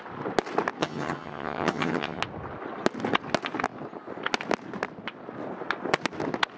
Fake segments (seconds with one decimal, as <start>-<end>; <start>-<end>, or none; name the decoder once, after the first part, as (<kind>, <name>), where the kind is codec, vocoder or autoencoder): 0.8-2.2 (vocoder, HiFi-GAN)